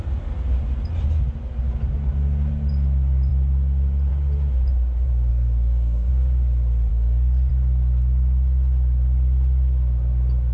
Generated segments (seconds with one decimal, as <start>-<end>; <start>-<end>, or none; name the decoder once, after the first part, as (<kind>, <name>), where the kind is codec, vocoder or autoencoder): 5.3-6.1 (codec, SNAC); 6.9-7.5